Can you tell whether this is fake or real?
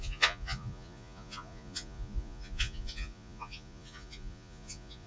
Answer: fake